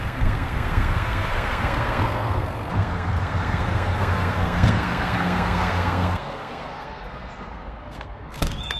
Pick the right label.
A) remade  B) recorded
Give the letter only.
A